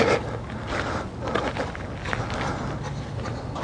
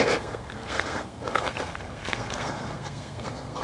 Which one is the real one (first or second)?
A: first